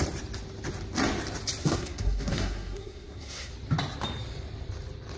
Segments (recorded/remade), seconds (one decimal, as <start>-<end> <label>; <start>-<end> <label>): 0.0-1.6 recorded; 1.6-3.5 remade; 3.5-5.2 recorded